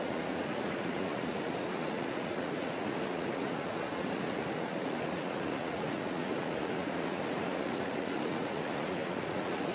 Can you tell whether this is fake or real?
fake